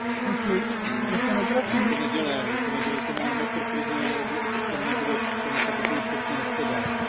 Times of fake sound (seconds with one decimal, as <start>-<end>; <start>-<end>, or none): none